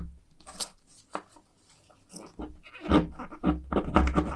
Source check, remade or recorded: recorded